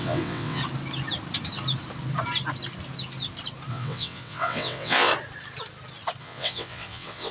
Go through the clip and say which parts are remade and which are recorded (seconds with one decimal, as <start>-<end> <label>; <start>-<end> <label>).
0.0-0.6 remade; 0.6-3.7 recorded; 3.7-5.1 remade; 5.1-6.2 recorded; 6.2-7.3 remade